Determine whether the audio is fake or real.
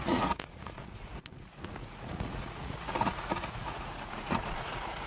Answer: fake